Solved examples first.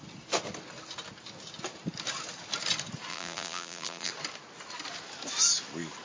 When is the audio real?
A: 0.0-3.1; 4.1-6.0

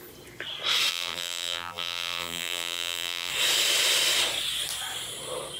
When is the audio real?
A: 0.0-0.9; 3.3-5.6